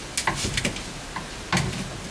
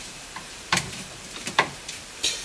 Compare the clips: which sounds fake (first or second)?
second